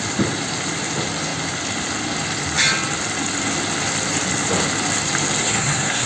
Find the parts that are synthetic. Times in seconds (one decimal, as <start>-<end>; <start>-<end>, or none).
5.4-6.1